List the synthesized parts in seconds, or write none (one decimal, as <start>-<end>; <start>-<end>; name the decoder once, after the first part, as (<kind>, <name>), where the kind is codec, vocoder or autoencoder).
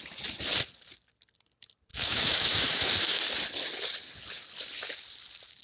1.9-3.2 (autoencoder, DAC-VAE)